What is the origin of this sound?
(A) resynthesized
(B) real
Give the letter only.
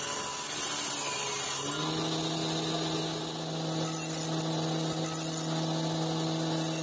B